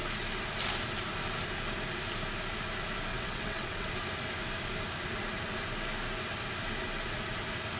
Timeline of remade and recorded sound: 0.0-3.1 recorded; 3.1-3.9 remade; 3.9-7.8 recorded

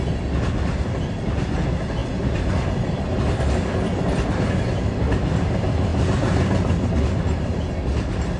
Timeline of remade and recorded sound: 0.0-8.4 recorded